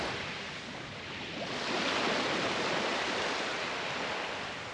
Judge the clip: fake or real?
real